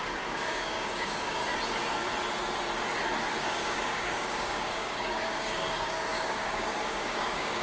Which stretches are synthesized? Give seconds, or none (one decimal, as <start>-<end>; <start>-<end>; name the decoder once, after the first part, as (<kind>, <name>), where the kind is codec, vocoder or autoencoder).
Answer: 0.0-1.4 (codec, DAC); 3.4-7.6